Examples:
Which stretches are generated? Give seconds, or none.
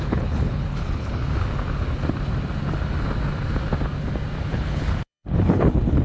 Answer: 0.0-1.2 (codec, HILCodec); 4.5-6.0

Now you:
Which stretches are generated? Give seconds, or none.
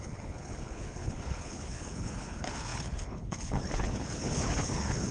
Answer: 0.0-5.1 (codec, HILCodec)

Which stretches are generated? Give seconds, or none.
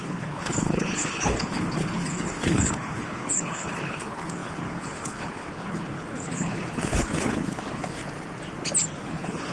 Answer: 0.0-8.0 (codec, HILCodec); 8.9-9.5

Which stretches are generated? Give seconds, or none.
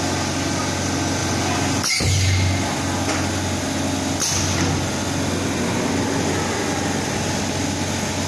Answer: none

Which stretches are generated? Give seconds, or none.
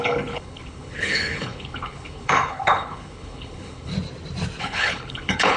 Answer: 0.0-3.9 (codec, HILCodec); 4.6-5.6